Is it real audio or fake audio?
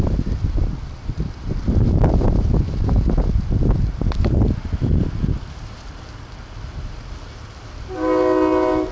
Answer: real